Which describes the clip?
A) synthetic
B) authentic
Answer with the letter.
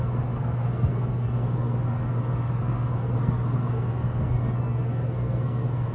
A